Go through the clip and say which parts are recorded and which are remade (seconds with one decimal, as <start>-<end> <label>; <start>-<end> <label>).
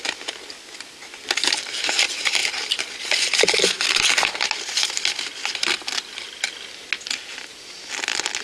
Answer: 0.0-8.4 recorded